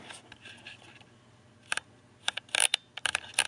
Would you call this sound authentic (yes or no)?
yes